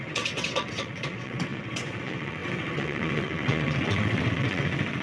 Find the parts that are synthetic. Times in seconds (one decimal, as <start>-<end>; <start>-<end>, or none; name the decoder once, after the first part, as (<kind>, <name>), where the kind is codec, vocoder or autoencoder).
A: 0.0-5.0 (vocoder, WaveNeXt)